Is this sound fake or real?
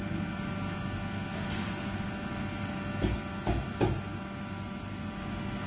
real